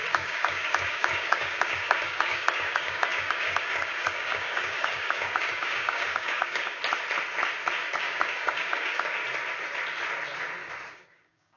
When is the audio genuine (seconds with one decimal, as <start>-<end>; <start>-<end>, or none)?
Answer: 6.8-8.0; 9.2-10.9